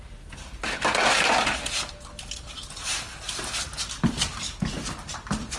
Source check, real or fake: real